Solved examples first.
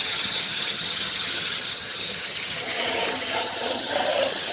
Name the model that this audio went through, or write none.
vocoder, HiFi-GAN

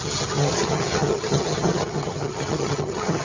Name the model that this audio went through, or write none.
vocoder, HiFi-GAN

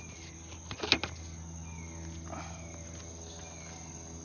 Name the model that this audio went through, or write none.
none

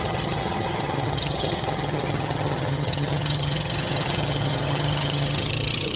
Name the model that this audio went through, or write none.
vocoder, HiFi-GAN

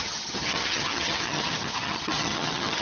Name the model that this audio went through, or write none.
vocoder, HiFi-GAN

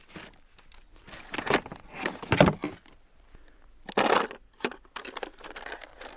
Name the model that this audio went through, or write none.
none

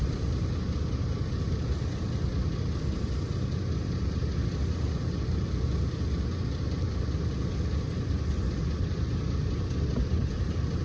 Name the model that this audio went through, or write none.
none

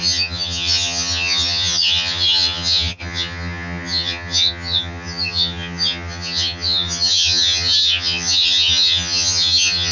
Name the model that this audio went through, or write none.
vocoder, HiFi-GAN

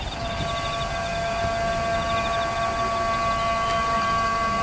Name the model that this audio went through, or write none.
none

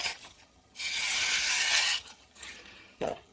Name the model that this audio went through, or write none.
vocoder, HiFi-GAN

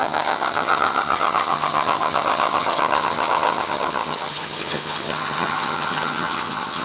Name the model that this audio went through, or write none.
vocoder, HiFi-GAN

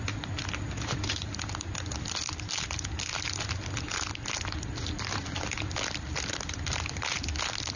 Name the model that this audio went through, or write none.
none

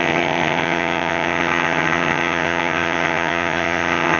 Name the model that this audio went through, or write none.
vocoder, HiFi-GAN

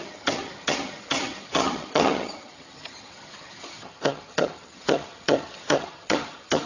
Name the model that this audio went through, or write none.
vocoder, HiFi-GAN